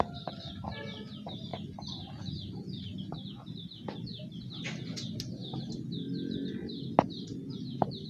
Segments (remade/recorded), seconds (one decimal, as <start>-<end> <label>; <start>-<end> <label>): 0.0-8.1 recorded